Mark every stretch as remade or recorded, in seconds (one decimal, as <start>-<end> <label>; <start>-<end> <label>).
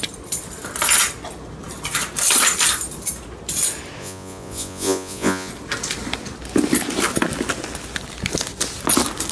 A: 0.0-4.0 recorded; 4.0-5.5 remade; 5.5-9.3 recorded